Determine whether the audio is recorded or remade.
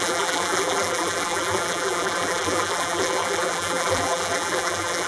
remade